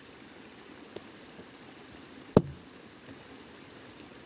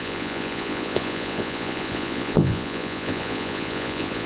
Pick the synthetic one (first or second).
second